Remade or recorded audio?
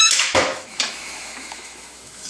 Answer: remade